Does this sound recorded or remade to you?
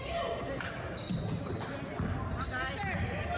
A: recorded